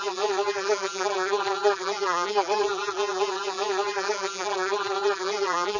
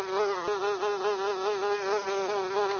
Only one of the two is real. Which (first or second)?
second